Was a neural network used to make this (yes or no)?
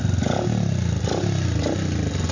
no